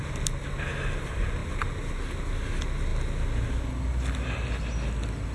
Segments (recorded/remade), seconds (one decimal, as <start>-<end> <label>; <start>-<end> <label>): 0.0-5.3 recorded